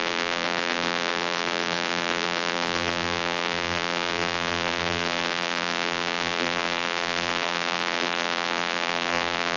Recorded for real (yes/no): no